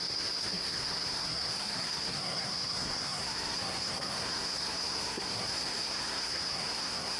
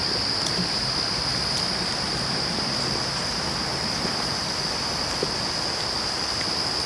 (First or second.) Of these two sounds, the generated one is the first